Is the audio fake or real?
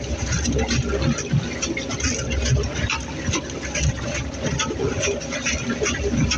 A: real